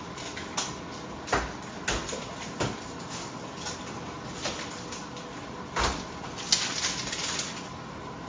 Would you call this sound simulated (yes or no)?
no